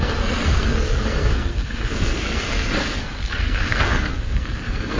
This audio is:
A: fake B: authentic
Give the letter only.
A